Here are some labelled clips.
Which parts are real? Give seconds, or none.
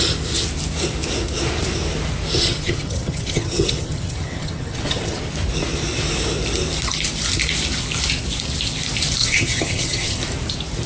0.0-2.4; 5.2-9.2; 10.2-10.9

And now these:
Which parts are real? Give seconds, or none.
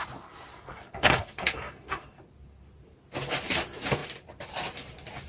0.0-0.5; 2.2-5.3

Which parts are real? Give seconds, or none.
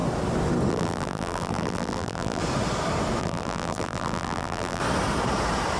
0.0-0.7; 2.4-3.2; 4.8-5.8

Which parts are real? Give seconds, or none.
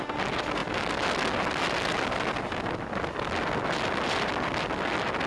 0.0-5.3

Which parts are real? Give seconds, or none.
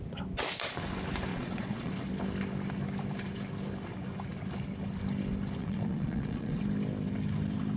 0.0-1.3; 1.9-5.6; 6.6-7.8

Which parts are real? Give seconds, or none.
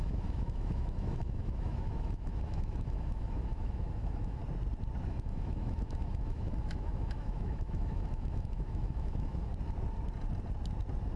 4.4-5.1; 9.5-11.2